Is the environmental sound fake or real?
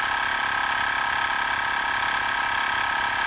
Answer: real